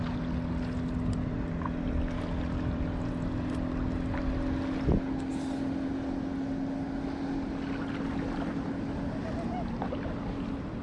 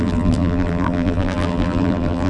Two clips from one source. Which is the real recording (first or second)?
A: first